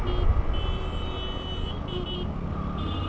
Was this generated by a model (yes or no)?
no